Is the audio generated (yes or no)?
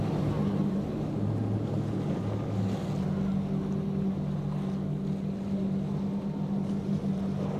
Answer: no